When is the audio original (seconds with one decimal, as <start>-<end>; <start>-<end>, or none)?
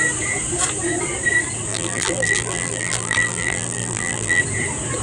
0.0-1.7; 4.4-5.0